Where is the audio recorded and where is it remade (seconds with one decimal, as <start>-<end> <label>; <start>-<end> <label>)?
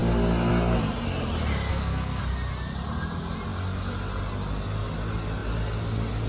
0.0-1.7 recorded; 1.7-2.2 remade; 2.2-6.3 recorded